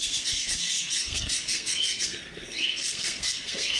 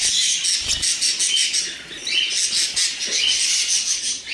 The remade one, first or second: first